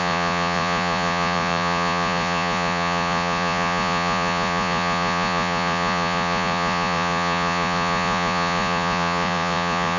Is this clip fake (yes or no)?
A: yes